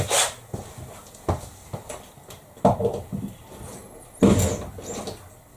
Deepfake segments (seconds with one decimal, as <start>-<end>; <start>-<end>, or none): 0.0-3.8; 5.0-5.6